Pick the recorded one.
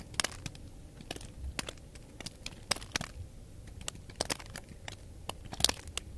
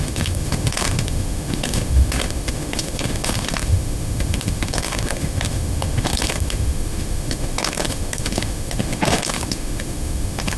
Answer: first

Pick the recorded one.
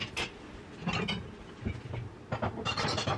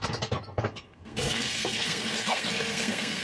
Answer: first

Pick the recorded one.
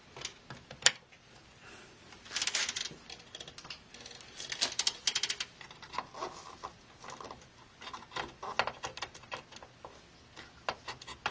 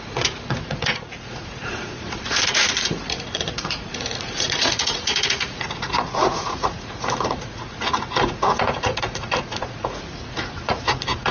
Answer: first